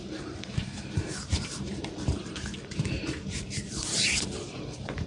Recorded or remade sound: remade